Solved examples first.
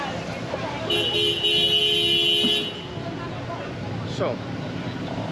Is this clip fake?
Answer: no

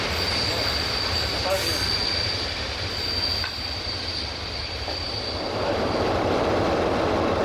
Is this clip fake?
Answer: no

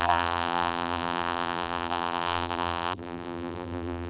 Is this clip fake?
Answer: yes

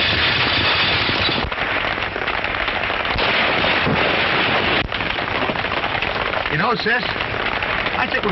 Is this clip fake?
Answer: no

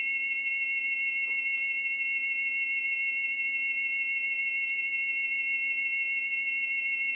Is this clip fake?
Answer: no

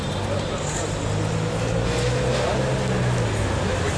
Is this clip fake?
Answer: no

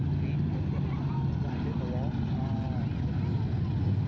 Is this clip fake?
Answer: no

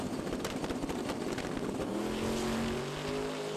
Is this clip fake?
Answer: no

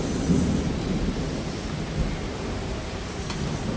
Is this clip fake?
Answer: no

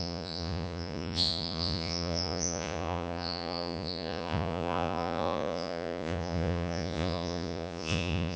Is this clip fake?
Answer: yes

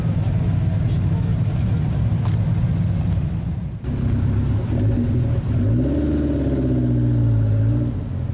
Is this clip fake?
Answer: no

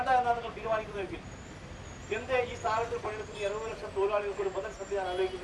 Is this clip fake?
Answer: no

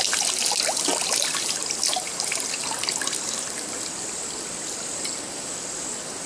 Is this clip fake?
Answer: no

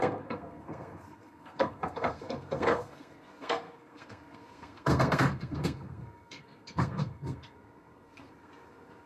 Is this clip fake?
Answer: yes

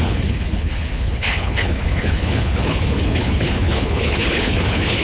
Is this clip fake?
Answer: yes